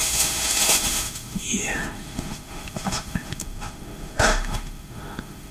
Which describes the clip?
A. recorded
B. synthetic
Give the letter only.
B